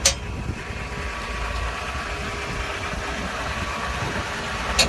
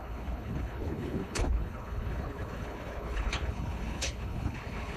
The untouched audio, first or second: first